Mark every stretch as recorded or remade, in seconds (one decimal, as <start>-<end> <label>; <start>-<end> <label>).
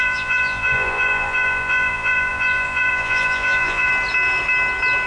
0.0-3.9 remade; 3.9-5.1 recorded